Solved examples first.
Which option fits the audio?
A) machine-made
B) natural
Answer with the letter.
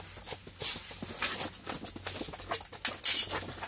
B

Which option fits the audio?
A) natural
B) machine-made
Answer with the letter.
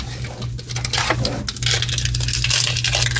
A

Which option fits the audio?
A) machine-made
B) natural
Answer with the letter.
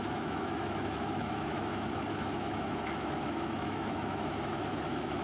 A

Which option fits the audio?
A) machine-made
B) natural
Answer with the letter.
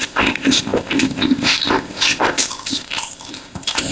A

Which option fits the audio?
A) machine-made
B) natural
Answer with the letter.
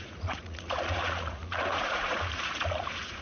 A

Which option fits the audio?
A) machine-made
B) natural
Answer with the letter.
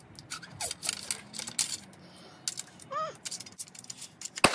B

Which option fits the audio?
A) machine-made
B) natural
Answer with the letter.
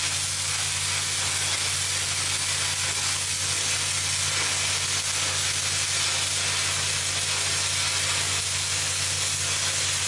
B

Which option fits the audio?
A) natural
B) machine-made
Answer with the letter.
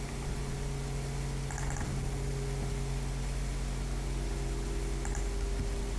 A